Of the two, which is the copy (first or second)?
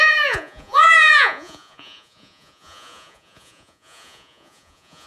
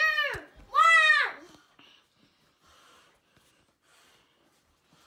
first